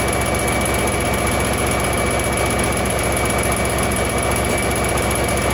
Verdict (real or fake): real